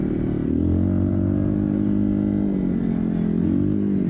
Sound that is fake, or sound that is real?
real